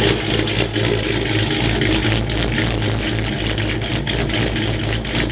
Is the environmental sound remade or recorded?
recorded